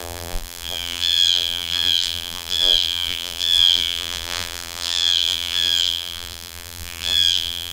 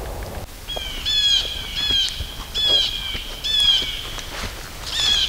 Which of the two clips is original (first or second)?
second